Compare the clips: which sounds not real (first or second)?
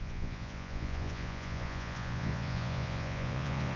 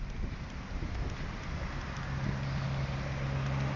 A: first